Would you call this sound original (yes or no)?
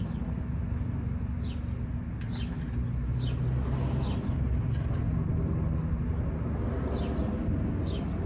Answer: yes